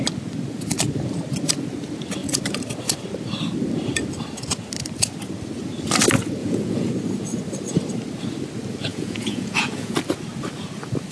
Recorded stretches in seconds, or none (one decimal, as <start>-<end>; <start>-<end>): 0.0-6.4; 6.9-8.9; 10.0-11.1